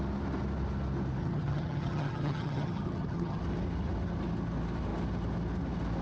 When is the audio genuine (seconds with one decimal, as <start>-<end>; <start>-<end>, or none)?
0.0-1.2; 3.4-6.0

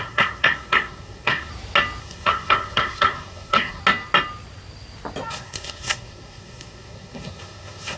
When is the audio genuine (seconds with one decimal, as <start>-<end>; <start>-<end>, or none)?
1.5-2.0; 3.8-5.3

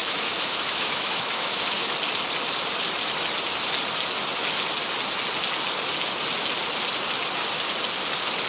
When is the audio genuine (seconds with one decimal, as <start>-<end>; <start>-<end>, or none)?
1.9-8.5

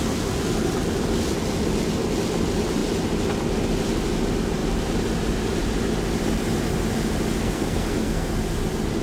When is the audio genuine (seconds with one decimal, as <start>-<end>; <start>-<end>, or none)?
0.0-7.4; 8.3-9.0

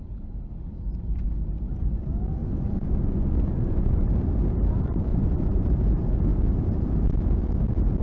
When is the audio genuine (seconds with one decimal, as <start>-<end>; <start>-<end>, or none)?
0.0-2.4; 4.1-5.1; 5.7-8.0

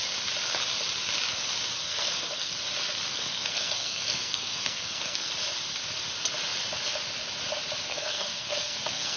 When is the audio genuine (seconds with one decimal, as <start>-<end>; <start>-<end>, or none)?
0.0-1.8; 2.5-3.1; 5.3-7.9

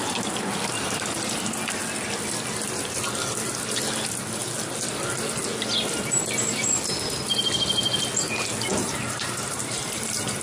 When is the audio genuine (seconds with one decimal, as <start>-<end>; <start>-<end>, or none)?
0.0-8.7

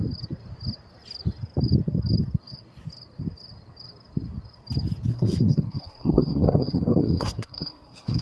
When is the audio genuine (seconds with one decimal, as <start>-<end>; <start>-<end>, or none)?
0.0-5.1